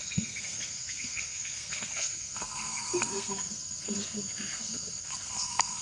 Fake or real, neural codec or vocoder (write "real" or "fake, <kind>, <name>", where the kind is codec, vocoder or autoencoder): fake, codec, SNAC